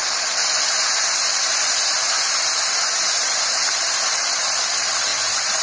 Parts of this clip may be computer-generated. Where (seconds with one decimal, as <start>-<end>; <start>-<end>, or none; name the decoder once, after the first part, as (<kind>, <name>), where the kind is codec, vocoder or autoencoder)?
1.5-4.4 (vocoder, BigVGAN v2)